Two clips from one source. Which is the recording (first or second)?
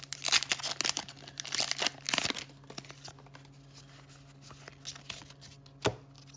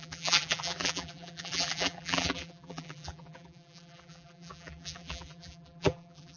first